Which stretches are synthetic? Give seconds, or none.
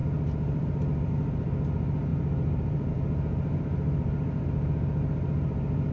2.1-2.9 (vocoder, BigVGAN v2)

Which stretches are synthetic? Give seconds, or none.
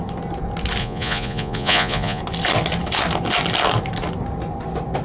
0.8-2.2 (vocoder, Vocos)